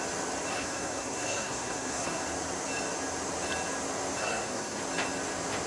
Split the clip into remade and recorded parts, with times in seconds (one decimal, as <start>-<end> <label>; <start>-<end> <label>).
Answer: 0.0-0.5 recorded; 0.5-2.2 remade; 2.2-4.2 recorded; 4.2-4.8 remade; 4.8-5.7 recorded